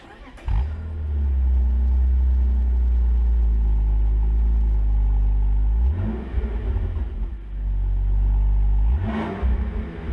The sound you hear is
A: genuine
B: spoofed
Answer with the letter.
A